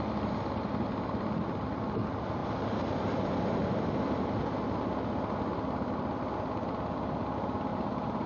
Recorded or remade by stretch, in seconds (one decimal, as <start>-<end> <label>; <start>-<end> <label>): 0.0-7.7 recorded; 7.7-8.3 remade